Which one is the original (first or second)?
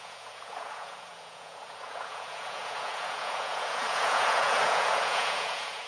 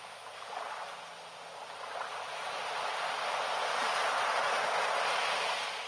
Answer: second